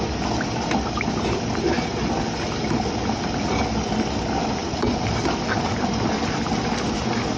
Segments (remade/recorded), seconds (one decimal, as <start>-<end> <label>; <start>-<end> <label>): 0.0-4.6 recorded; 4.6-6.5 remade; 6.5-7.4 recorded